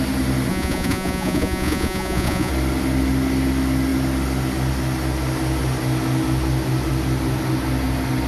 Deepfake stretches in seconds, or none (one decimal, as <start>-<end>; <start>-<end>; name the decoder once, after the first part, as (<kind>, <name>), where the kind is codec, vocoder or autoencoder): 0.5-2.5 (vocoder, Vocos)